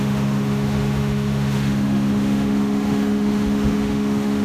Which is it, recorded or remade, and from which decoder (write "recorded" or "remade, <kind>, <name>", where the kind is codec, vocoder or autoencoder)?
remade, autoencoder, DAC-VAE